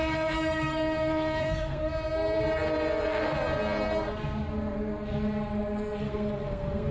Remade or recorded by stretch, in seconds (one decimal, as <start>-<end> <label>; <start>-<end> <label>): 0.0-1.9 remade; 1.9-6.0 recorded; 6.0-6.9 remade